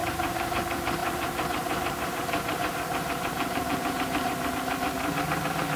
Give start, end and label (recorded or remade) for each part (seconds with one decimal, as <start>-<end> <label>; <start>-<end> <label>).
0.0-0.6 remade; 0.6-1.0 recorded; 1.0-4.5 remade; 4.5-5.8 recorded